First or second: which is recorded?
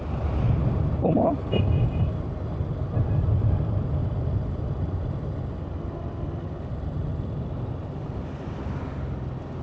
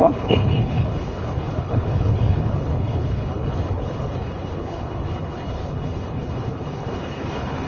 first